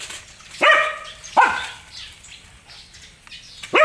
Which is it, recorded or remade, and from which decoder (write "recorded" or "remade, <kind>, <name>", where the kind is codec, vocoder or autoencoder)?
recorded